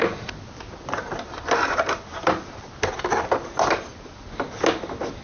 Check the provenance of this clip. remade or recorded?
recorded